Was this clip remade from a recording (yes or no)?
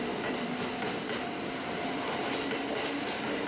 no